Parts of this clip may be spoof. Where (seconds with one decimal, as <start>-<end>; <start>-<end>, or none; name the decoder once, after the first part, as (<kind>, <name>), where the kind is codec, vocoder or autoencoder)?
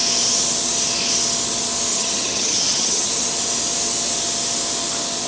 1.9-3.1 (vocoder, HiFi-GAN)